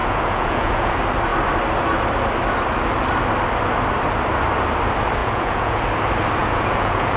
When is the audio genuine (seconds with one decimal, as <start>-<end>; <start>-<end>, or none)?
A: 0.9-5.2; 5.8-6.4